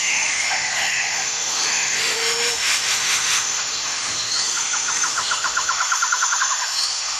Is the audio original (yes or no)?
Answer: no